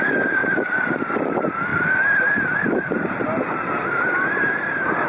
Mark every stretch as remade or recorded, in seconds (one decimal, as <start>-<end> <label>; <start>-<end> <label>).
0.0-0.4 recorded; 0.4-1.1 remade; 1.1-1.7 recorded; 1.7-3.7 remade; 3.7-5.1 recorded